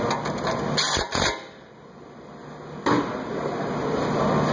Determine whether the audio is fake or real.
real